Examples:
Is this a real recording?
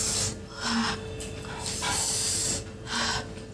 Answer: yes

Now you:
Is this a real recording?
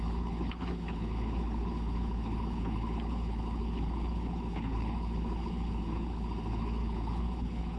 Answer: no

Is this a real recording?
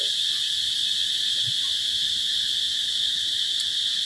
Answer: yes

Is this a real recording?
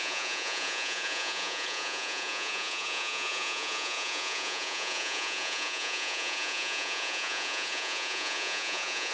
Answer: no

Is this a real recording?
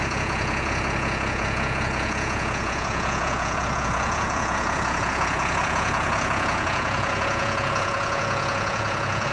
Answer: no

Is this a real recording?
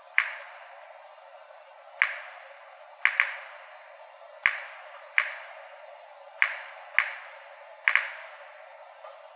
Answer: yes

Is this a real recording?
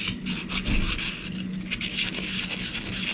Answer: yes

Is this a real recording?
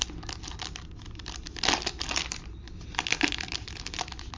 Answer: yes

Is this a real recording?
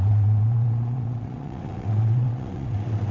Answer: no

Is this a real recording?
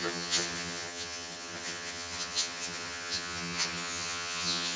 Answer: no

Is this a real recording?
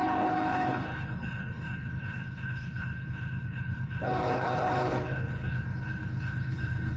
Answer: no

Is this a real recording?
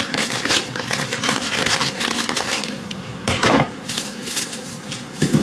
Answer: no